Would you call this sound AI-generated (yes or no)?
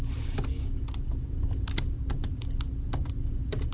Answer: no